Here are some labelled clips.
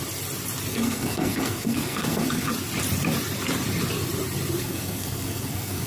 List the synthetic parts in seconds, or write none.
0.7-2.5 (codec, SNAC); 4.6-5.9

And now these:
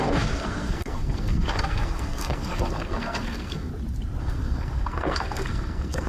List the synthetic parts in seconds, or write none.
0.0-3.7 (codec, SNAC); 4.2-6.1

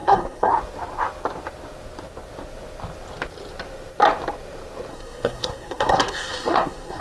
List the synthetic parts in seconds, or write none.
0.0-0.5 (codec, SNAC); 4.9-7.0

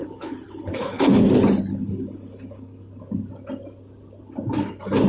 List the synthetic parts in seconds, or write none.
0.0-1.1 (codec, HILCodec); 1.7-3.0

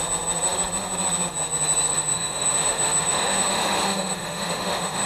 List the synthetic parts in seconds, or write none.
1.9-5.1 (autoencoder, DAC-VAE)

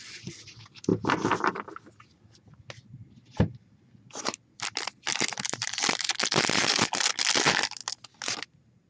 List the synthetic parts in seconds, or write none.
none

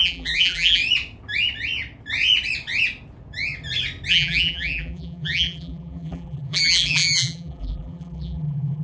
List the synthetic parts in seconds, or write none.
0.0-0.8 (vocoder, BigVGAN v2); 4.1-8.8

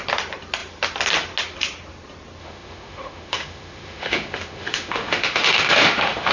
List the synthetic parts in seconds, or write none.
2.4-6.3 (autoencoder, DAC-VAE)